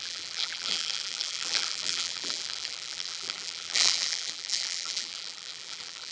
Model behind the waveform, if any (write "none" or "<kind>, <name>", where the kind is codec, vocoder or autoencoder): vocoder, BigVGAN v2